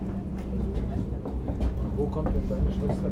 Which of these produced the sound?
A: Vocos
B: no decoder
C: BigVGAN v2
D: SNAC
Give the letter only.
B